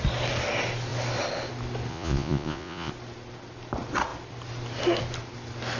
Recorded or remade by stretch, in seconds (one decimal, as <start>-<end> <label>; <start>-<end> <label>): 0.0-1.9 recorded; 1.9-2.9 remade; 2.9-5.8 recorded